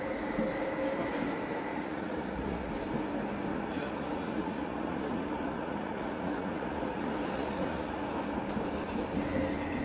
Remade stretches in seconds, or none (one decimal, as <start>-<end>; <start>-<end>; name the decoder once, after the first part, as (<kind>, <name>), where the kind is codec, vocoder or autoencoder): 1.7-2.7 (vocoder, Vocos); 3.5-8.0